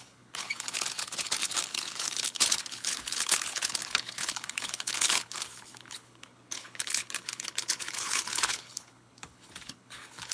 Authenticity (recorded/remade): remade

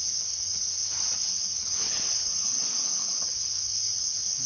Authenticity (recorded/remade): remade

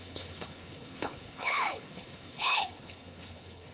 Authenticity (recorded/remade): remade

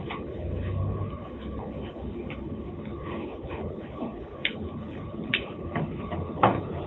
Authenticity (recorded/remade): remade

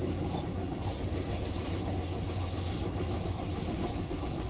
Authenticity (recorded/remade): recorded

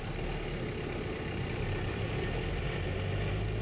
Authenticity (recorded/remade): recorded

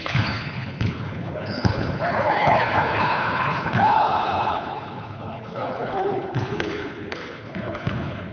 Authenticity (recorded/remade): remade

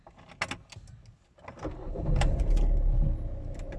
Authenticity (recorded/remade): recorded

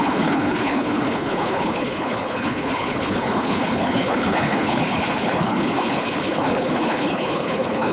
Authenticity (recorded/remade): remade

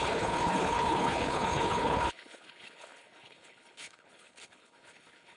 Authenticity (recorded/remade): remade